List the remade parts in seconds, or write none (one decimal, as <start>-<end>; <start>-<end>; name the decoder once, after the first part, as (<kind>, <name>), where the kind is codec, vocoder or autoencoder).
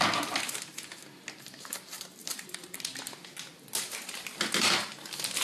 none